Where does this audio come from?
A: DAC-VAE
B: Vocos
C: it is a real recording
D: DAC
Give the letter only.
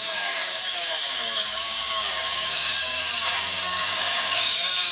D